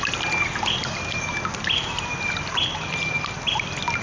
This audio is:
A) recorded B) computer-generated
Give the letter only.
A